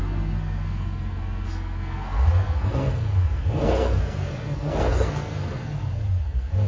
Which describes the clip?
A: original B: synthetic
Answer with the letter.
B